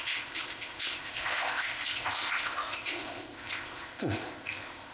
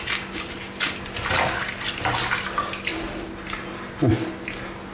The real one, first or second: second